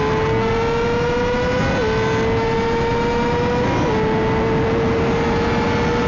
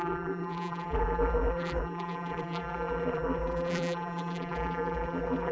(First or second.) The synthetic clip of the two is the second